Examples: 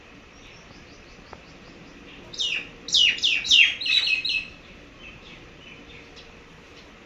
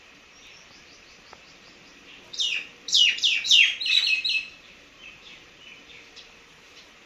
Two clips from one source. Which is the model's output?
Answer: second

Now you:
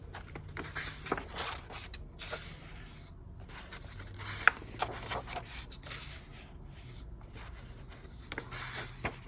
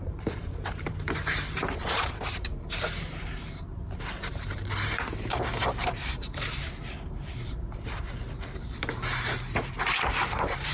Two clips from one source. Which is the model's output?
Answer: second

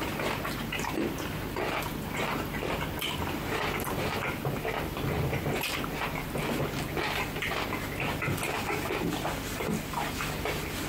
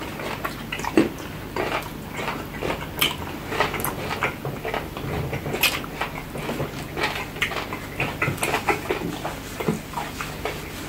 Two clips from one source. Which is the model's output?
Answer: first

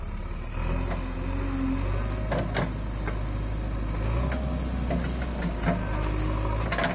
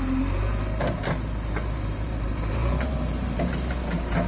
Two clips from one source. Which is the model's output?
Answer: second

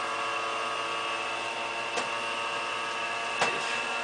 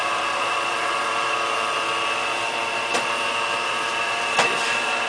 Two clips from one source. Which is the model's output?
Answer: second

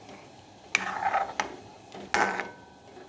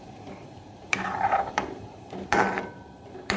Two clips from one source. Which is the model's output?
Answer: second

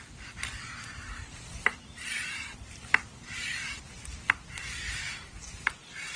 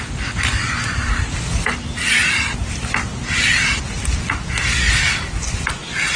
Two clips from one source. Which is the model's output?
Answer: first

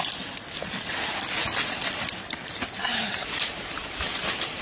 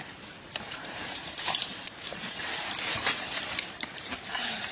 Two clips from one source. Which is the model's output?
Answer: second